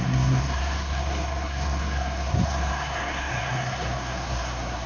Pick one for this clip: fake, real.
fake